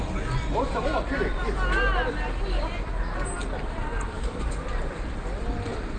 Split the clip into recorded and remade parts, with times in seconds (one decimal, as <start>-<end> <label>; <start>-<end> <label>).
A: 0.0-3.4 recorded; 3.4-4.9 remade; 4.9-6.0 recorded